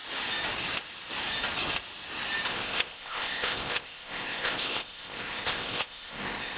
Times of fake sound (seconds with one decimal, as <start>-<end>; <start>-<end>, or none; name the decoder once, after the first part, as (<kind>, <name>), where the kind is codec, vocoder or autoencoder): 2.5-6.6 (codec, ZipCodec)